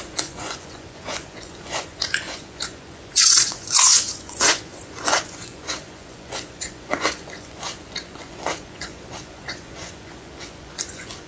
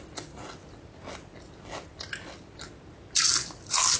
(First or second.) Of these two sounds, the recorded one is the second